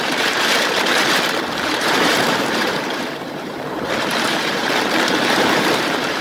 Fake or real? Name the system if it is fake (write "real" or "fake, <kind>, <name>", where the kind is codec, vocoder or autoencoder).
fake, vocoder, BigVGAN v2